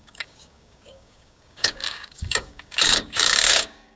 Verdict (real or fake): fake